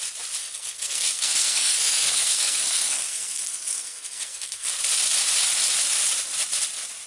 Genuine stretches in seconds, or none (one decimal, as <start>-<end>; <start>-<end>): 0.0-0.4; 4.7-7.1